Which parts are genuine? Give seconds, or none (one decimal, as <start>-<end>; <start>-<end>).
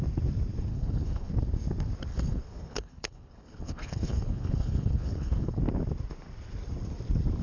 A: 0.0-0.7; 1.3-2.1; 5.6-7.4